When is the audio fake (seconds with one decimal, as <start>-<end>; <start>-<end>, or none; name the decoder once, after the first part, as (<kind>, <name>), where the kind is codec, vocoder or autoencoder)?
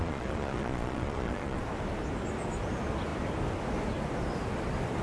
0.0-1.6 (vocoder, Vocos)